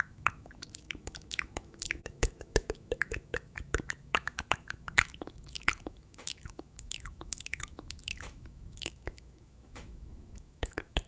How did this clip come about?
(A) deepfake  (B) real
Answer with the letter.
A